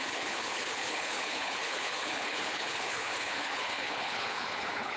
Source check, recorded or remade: remade